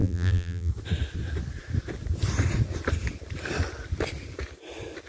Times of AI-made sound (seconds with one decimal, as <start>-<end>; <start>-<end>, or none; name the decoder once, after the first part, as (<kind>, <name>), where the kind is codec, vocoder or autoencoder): 0.0-0.7 (vocoder, BigVGAN v2)